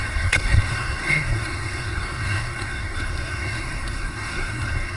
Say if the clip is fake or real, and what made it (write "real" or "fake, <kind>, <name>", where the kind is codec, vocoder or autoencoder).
fake, codec, SNAC